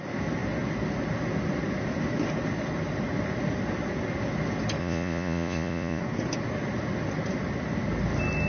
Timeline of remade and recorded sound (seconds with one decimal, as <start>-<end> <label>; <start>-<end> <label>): 0.0-4.8 recorded; 4.8-6.0 remade; 6.0-8.5 recorded